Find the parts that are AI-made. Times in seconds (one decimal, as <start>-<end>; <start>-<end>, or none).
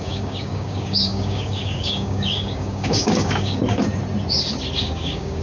0.0-3.6; 4.8-5.4